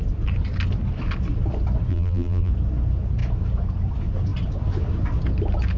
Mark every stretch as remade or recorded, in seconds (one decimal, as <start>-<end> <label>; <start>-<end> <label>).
0.0-1.9 recorded; 1.9-2.5 remade; 2.5-5.8 recorded